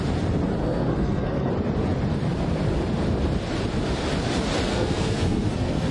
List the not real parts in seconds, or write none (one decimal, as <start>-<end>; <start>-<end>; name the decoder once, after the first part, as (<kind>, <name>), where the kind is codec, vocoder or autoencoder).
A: 0.6-1.5 (codec, SNAC); 4.7-5.9